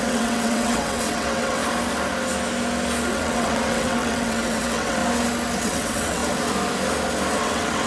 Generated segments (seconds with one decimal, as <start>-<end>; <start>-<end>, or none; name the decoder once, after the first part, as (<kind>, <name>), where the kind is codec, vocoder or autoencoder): 0.0-1.6 (vocoder, WaveNeXt); 3.1-5.0; 5.6-6.2; 7.4-7.9